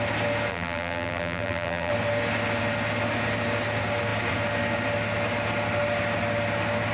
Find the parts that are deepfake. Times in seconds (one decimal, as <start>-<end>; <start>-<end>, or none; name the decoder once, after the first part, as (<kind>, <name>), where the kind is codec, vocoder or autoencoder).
0.5-1.9 (vocoder, BigVGAN v2)